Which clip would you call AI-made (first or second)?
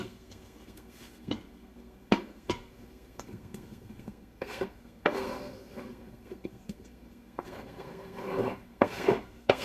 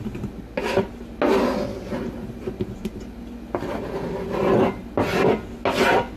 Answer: first